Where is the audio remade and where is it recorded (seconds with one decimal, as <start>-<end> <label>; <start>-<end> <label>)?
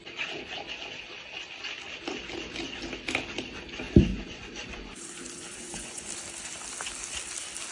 0.0-4.1 recorded; 4.1-6.1 remade; 6.1-7.7 recorded